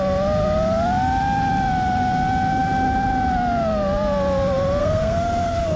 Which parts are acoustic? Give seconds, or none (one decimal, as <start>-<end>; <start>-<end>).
0.0-4.8